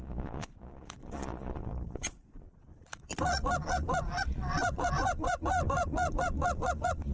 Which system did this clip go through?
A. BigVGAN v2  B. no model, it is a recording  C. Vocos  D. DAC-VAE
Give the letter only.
C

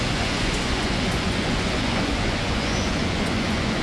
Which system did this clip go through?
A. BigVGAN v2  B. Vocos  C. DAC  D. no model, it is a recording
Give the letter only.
B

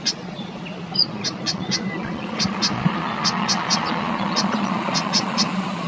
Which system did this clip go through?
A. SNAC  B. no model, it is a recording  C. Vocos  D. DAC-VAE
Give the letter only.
C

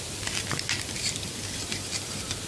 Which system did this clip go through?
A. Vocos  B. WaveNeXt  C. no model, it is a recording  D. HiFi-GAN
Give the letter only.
C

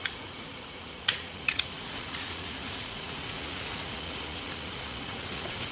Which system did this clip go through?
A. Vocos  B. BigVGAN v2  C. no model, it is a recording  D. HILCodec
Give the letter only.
A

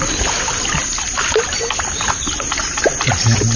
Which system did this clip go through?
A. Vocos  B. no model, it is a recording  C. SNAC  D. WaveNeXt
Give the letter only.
B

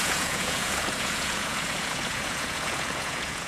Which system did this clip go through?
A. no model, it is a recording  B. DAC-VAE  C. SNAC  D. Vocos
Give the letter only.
D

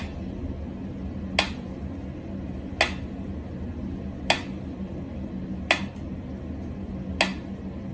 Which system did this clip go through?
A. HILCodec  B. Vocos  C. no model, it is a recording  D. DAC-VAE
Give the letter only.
C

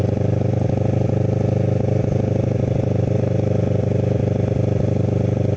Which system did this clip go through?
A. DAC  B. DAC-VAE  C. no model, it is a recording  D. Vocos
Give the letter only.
C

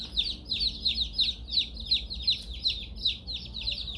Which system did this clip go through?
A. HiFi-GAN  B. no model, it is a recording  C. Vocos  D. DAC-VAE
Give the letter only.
B